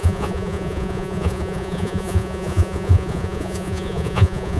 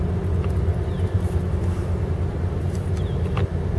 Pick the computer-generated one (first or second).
first